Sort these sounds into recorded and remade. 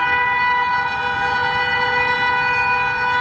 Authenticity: recorded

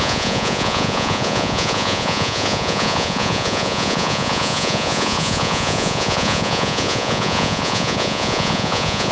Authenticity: remade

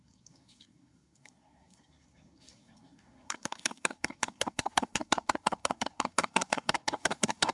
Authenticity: remade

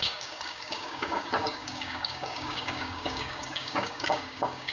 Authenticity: remade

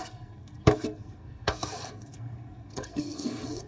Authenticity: remade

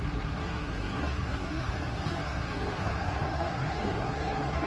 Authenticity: remade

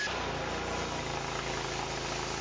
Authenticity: recorded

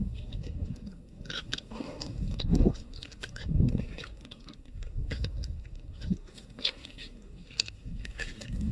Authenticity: remade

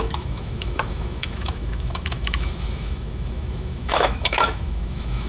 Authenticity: remade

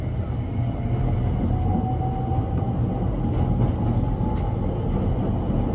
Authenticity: recorded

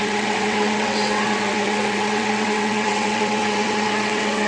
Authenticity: remade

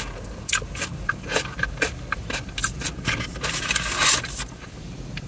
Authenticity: recorded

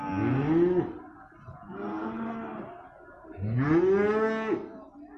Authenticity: recorded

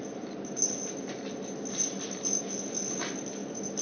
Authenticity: recorded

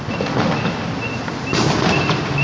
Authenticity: recorded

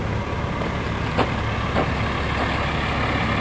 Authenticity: recorded